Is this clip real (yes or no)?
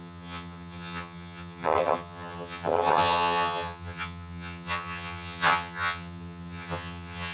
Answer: no